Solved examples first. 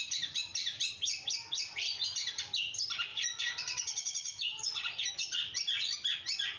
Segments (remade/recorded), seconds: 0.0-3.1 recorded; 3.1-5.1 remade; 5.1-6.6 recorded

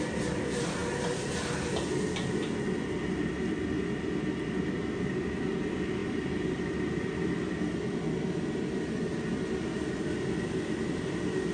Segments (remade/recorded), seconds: 0.0-11.5 recorded

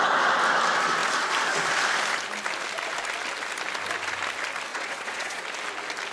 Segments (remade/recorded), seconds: 0.0-4.7 recorded; 4.7-5.4 remade; 5.4-6.1 recorded

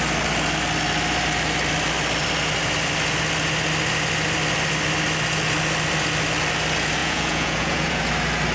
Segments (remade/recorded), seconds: 0.0-7.0 recorded; 7.0-8.0 remade; 8.0-8.5 recorded

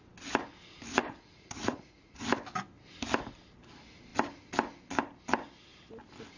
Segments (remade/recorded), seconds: 0.0-1.0 recorded; 1.0-2.2 remade; 2.2-6.4 recorded

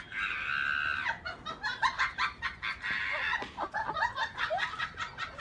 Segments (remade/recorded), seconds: 0.0-5.4 recorded